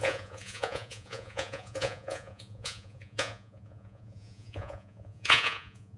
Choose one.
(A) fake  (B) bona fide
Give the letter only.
A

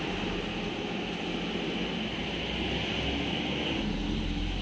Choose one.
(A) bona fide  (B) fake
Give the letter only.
A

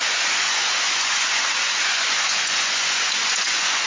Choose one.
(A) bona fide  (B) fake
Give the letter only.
B